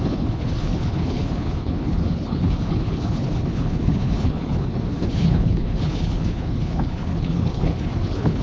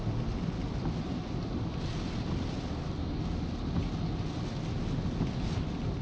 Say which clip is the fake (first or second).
first